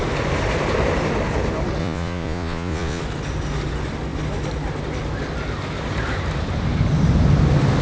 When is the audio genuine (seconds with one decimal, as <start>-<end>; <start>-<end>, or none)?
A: 0.0-1.8; 3.0-7.8